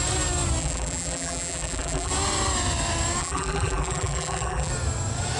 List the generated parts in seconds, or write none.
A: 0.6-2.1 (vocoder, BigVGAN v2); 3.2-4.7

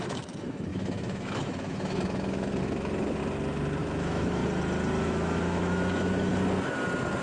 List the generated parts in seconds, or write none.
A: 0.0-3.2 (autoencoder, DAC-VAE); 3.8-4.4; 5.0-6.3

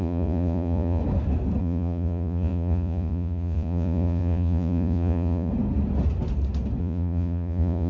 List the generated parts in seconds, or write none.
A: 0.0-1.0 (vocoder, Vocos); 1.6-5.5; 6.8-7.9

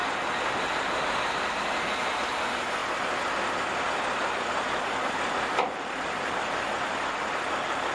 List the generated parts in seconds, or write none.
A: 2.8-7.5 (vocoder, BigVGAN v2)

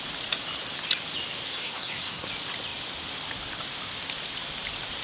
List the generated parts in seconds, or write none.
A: 1.5-2.3 (codec, SNAC)

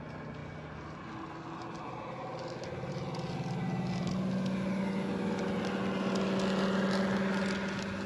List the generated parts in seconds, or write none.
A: none

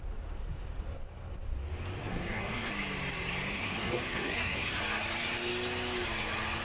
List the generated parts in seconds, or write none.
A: 2.1-2.7 (codec, SNAC); 3.5-4.8

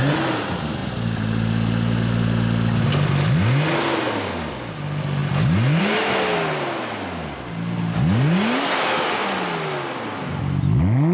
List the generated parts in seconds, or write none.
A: none